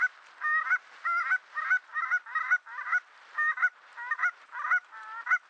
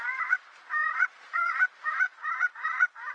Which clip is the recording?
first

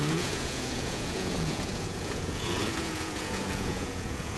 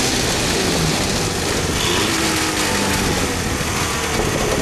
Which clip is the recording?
second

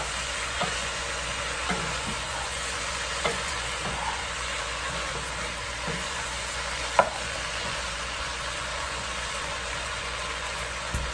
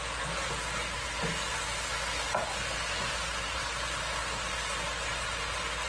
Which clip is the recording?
second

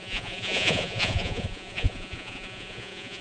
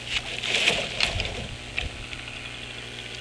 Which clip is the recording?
second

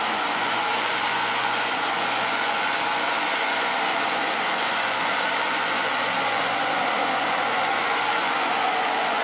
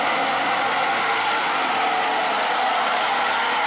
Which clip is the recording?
second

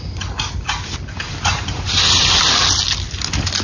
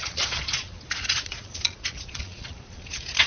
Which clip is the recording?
first